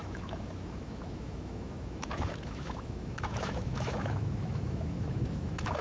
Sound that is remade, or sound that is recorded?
remade